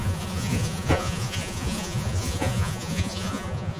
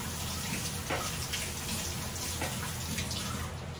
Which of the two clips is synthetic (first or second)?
first